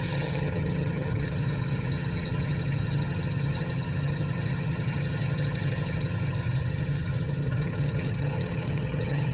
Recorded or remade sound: remade